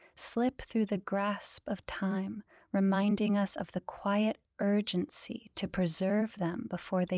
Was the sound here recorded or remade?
remade